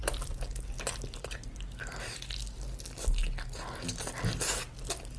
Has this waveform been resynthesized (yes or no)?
no